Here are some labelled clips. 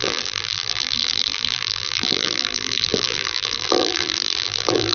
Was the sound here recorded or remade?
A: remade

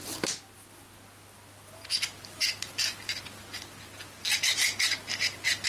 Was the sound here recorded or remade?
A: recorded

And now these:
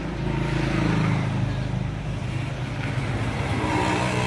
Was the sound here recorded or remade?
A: recorded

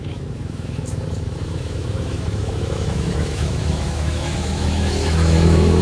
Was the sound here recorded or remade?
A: remade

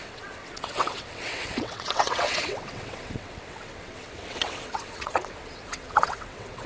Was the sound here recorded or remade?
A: remade